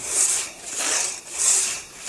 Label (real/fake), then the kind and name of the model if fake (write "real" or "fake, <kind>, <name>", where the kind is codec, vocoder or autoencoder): fake, vocoder, BigVGAN v2